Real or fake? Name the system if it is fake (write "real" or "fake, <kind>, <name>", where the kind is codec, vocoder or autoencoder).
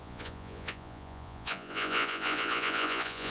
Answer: fake, vocoder, Vocos